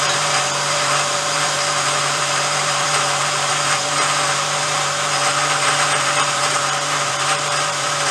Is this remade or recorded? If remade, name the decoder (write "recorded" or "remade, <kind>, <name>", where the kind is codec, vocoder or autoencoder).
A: remade, vocoder, BigVGAN v2